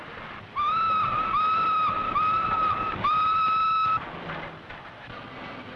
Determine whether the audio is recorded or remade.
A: recorded